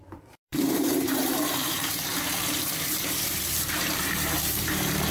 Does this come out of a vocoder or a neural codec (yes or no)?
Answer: yes